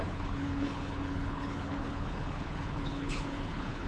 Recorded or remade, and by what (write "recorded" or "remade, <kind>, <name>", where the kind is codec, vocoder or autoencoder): remade, codec, HILCodec